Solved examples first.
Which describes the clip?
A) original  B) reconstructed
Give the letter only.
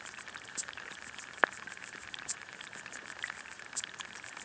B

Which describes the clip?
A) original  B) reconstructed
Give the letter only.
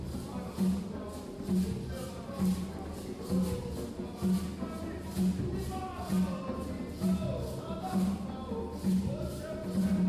A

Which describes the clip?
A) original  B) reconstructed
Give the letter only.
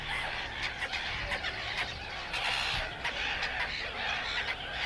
A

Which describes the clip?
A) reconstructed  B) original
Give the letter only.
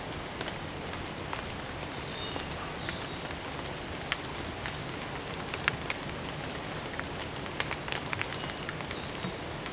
B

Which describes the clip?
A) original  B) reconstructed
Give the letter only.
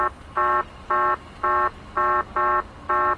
A